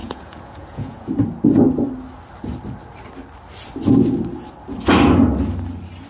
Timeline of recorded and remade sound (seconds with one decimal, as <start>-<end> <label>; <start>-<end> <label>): 0.0-1.1 remade; 1.1-6.1 recorded